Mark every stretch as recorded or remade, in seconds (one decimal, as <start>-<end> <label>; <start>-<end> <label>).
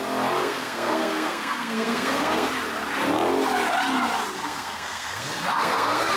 0.0-0.4 recorded; 0.4-2.5 remade; 2.5-4.4 recorded; 4.4-6.2 remade